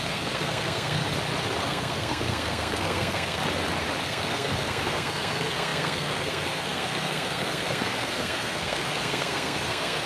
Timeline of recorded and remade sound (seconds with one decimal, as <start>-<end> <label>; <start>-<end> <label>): 0.0-1.0 remade; 1.0-1.6 recorded; 1.6-3.4 remade; 3.4-4.0 recorded; 4.0-10.1 remade